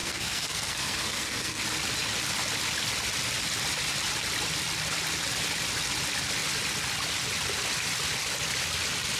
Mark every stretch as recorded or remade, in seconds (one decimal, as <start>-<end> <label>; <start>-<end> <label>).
0.0-1.6 remade; 1.6-9.2 recorded